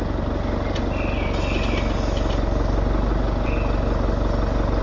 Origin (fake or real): real